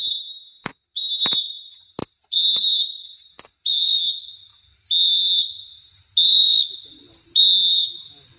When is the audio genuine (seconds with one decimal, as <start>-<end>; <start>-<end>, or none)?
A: 0.0-8.4